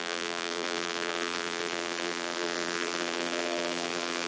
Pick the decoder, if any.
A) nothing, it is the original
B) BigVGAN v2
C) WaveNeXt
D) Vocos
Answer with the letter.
B